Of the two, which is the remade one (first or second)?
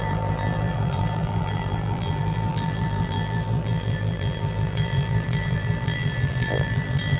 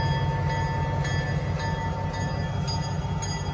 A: first